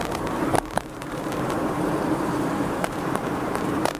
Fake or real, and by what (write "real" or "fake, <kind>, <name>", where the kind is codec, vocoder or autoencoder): fake, vocoder, BigVGAN v2